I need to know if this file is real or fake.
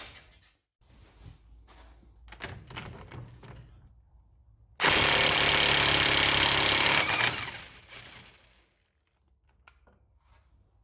real